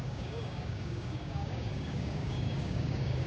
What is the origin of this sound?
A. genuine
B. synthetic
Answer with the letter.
B